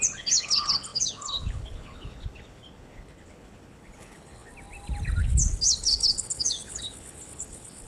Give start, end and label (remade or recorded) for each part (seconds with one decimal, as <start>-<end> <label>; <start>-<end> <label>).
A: 0.0-4.5 remade; 4.5-5.2 recorded; 5.2-7.9 remade